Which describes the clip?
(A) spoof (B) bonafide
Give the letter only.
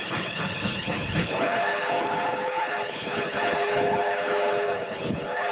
A